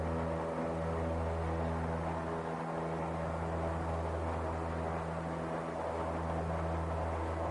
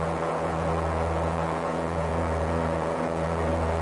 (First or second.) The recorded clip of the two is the first